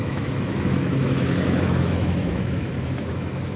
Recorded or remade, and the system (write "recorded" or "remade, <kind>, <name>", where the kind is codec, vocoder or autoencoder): remade, autoencoder, DAC-VAE